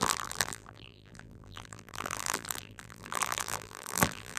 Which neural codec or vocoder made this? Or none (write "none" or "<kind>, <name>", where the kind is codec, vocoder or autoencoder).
vocoder, BigVGAN v2